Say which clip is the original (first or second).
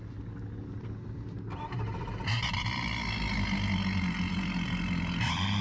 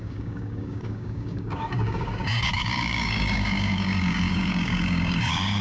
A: first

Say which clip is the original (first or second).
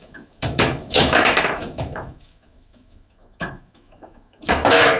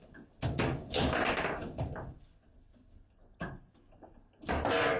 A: second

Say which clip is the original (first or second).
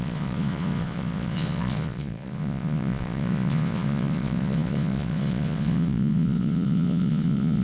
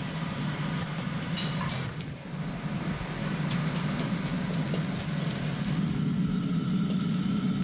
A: second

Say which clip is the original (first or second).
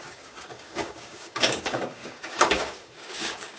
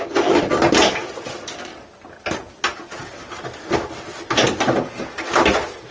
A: second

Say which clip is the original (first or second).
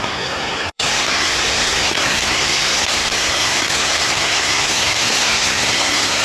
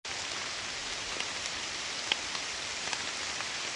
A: second